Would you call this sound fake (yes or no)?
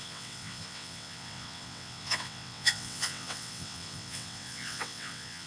yes